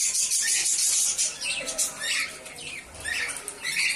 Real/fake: real